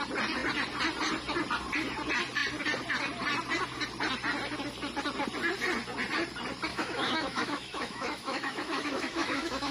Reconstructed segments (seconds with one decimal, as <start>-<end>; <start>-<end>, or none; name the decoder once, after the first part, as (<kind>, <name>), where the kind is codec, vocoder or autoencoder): 6.7-9.7 (autoencoder, DAC-VAE)